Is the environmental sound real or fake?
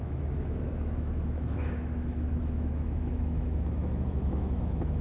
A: fake